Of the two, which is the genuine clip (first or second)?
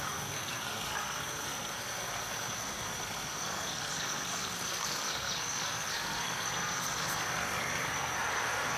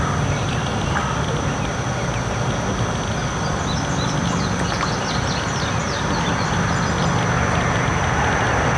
second